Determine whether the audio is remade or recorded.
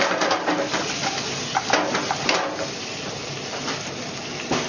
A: recorded